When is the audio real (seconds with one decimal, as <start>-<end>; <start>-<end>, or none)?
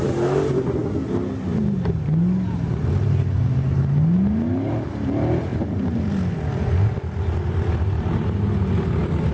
0.0-9.3